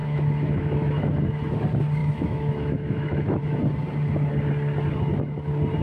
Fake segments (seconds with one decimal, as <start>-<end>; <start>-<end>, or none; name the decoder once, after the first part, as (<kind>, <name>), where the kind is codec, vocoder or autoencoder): 0.0-1.0 (autoencoder, DAC-VAE); 2.0-3.4